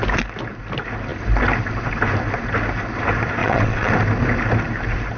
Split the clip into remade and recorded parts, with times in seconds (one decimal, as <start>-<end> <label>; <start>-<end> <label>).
0.0-3.4 recorded; 3.4-3.9 remade; 3.9-5.2 recorded